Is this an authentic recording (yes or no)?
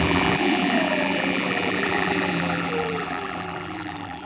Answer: no